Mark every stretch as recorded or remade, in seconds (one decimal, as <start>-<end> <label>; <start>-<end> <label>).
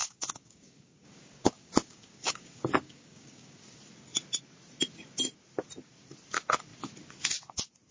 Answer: 0.0-3.6 remade; 3.6-7.9 recorded